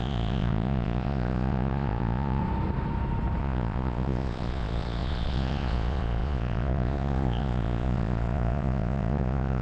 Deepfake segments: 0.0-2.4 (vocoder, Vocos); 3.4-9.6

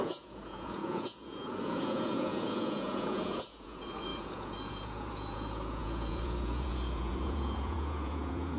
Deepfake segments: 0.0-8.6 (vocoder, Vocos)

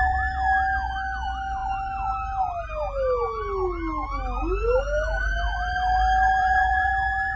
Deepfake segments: 6.4-6.9 (vocoder, Vocos)